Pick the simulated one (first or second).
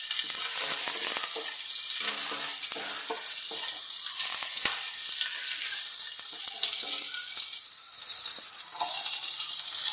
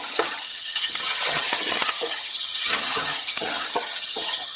second